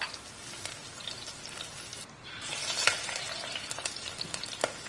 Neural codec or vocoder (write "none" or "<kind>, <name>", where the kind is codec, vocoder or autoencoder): none